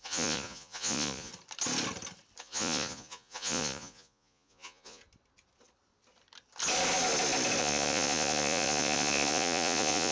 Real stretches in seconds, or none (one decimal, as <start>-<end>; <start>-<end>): 1.3-2.4; 5.0-7.6